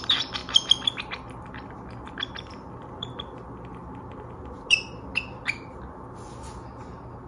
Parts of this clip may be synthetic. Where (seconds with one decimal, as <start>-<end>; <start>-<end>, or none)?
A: none